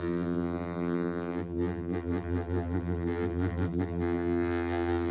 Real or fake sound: fake